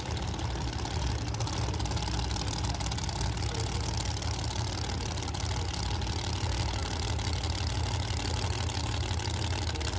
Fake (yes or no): no